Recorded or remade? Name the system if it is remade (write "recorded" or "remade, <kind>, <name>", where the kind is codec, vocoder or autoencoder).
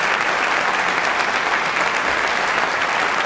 recorded